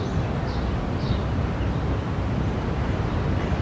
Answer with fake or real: real